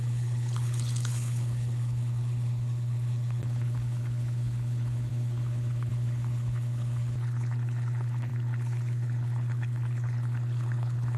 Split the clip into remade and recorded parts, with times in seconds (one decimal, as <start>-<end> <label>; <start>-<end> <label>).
0.0-11.2 remade

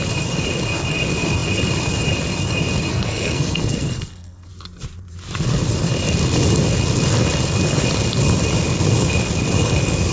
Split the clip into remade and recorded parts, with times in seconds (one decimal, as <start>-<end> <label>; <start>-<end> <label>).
0.0-2.9 recorded; 2.9-4.5 remade; 4.5-10.1 recorded

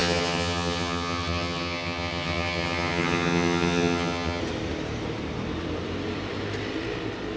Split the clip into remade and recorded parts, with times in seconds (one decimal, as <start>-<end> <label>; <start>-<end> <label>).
0.0-4.4 remade; 4.4-7.4 recorded

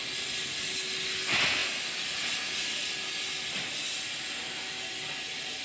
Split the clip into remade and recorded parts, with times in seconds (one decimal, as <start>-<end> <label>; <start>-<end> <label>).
0.0-5.6 recorded